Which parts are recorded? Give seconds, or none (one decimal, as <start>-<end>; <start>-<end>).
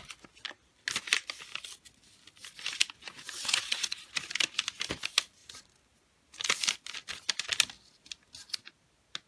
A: 0.0-3.1; 4.1-9.3